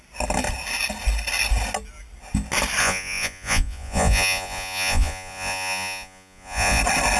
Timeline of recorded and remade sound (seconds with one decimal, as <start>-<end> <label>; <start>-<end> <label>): 0.0-2.8 recorded; 2.8-6.8 remade; 6.8-7.2 recorded